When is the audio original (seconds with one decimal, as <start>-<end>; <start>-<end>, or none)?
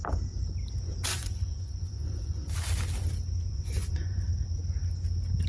0.0-1.1; 2.5-3.5; 4.3-5.5